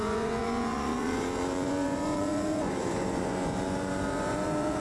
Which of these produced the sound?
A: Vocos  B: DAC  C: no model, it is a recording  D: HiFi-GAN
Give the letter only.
A